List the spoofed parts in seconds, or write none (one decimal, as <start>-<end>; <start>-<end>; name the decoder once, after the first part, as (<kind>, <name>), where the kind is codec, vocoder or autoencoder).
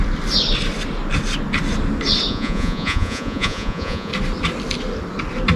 2.3-4.1 (vocoder, Vocos)